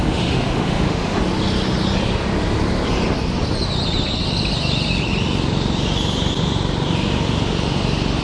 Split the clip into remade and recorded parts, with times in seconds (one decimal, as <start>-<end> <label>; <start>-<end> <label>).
0.0-1.2 remade; 1.2-8.2 recorded